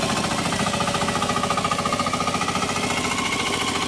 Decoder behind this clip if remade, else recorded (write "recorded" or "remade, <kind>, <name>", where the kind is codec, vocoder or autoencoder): recorded